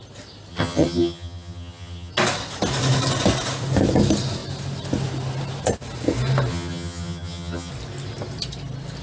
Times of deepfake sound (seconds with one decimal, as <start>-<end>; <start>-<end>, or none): 0.5-2.1; 6.5-7.7